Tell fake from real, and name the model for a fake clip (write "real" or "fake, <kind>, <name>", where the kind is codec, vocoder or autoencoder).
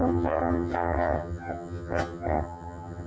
fake, vocoder, HiFi-GAN